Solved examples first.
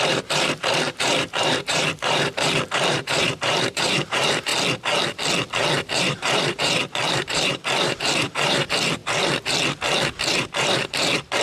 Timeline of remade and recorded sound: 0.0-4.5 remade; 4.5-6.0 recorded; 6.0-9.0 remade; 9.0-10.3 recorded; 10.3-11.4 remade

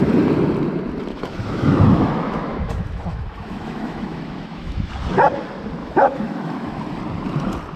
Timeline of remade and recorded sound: 0.0-1.1 recorded; 1.1-4.9 remade; 4.9-5.8 recorded; 5.8-6.8 remade; 6.8-7.8 recorded